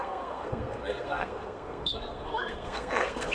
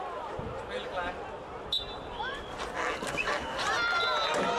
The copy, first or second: first